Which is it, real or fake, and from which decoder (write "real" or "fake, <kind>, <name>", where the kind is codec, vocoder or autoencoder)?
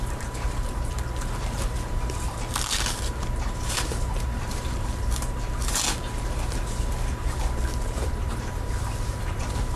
fake, vocoder, BigVGAN v2